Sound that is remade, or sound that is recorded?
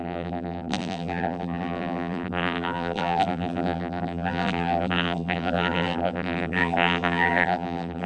remade